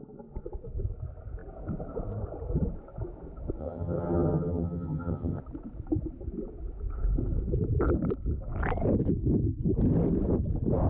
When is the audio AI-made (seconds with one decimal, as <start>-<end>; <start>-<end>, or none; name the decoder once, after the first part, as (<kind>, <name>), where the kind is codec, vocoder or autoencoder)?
3.6-5.4 (vocoder, HiFi-GAN)